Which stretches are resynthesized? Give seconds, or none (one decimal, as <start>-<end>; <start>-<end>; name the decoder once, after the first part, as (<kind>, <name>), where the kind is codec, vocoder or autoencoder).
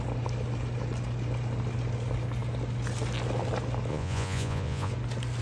3.9-4.9 (vocoder, Vocos)